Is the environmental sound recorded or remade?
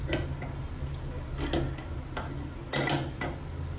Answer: recorded